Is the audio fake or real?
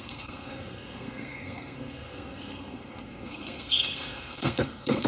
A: fake